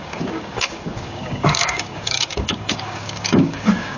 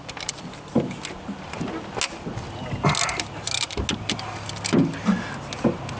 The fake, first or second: first